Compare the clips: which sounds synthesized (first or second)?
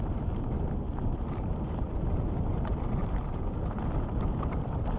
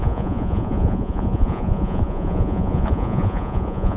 second